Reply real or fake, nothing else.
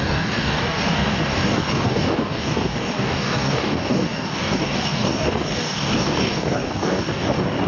fake